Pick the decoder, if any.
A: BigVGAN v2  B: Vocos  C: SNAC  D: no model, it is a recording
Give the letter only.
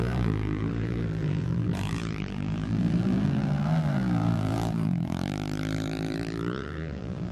A